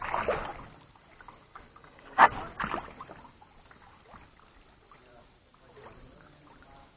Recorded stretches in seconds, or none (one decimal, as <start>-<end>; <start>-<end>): 0.0-1.8; 2.3-7.0